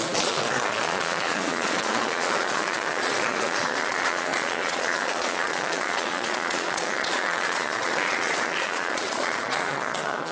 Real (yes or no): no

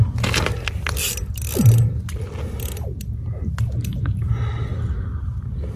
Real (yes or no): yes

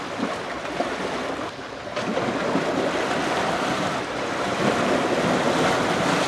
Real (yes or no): yes